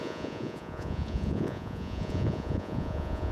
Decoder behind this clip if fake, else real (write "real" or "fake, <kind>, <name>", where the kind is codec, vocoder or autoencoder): fake, vocoder, Vocos